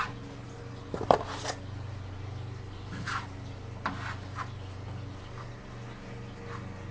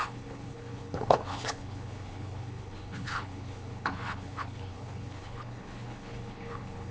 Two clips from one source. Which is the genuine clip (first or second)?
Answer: first